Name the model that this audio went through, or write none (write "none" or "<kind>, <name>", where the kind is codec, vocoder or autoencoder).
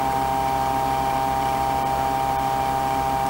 none